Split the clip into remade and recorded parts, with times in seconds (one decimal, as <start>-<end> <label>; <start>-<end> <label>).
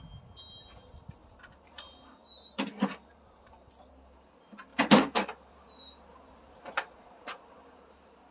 0.0-1.2 recorded; 1.2-3.9 remade; 3.9-4.7 recorded; 4.7-7.8 remade; 7.8-8.3 recorded